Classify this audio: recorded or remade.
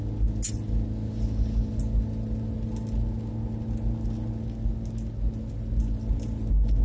recorded